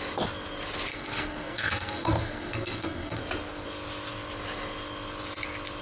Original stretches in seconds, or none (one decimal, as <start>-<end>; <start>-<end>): 0.0-0.9; 3.2-5.8